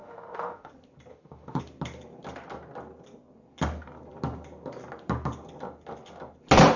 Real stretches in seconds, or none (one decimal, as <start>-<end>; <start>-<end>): 0.7-1.1; 1.6-6.8

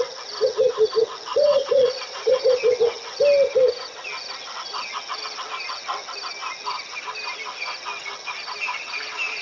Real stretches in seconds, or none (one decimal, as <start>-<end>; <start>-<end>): 0.0-1.3; 2.6-9.4

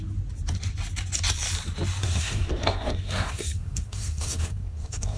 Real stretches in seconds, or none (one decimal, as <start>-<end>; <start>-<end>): 0.0-2.0

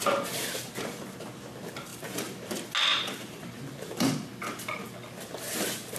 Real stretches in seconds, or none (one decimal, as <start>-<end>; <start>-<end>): 0.0-1.9; 2.5-2.9; 4.1-6.0

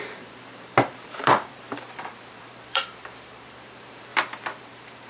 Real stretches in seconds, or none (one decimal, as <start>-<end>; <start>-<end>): 4.1-4.6

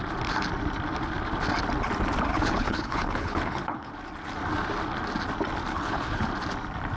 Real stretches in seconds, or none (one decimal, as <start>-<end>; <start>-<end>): 0.0-2.3; 3.9-5.7; 6.3-7.0